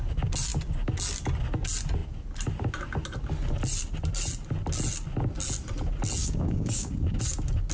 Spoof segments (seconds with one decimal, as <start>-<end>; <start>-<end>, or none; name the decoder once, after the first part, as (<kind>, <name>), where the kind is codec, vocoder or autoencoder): 6.2-7.2 (codec, DAC)